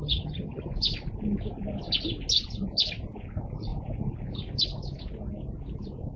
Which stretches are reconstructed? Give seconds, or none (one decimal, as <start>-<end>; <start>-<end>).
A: 0.0-0.7